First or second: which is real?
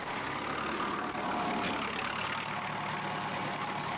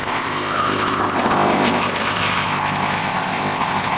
first